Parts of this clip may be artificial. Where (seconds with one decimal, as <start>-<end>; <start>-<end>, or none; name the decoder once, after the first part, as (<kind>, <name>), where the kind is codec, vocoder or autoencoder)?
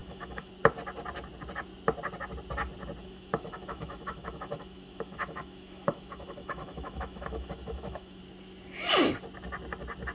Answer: 0.0-0.5 (autoencoder, DAC-VAE); 3.0-8.2